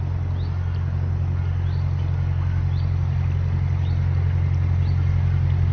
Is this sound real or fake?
real